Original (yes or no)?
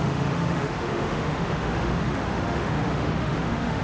no